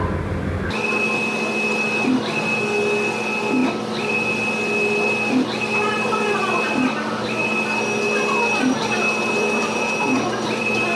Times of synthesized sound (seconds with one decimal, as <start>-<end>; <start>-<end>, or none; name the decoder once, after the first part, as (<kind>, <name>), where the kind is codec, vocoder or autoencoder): none